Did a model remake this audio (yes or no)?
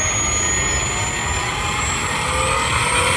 no